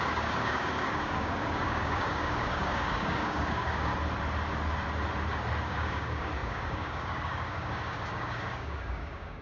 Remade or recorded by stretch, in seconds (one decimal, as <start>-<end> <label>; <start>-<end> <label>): 0.0-3.9 remade; 3.9-5.6 recorded; 5.6-9.4 remade